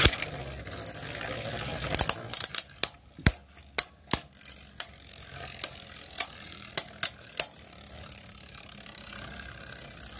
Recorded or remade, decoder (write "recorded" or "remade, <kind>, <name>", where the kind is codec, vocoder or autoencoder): recorded